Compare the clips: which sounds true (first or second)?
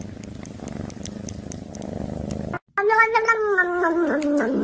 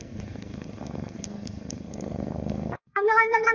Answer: first